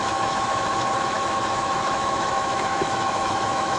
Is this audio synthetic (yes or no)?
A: yes